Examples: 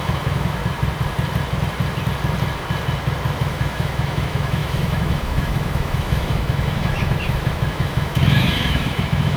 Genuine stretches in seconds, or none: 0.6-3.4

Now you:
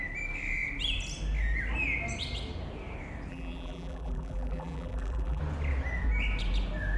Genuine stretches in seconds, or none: 0.0-3.3; 5.4-7.0

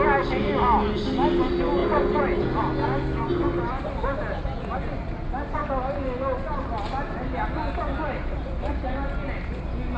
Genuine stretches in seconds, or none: 0.0-1.8; 2.6-10.0

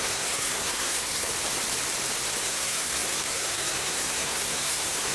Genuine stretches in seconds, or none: 1.3-2.4

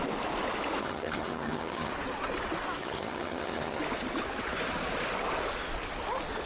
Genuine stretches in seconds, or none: 0.0-0.8; 1.9-2.8; 3.8-6.5

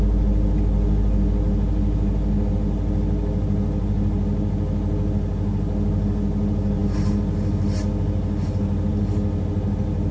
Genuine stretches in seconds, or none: 0.0-10.1

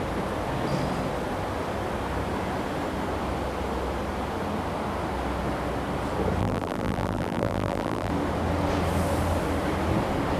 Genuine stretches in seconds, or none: 0.0-6.4; 8.1-10.4